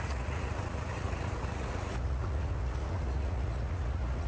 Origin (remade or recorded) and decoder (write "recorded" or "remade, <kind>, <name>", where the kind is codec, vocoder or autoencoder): remade, vocoder, Vocos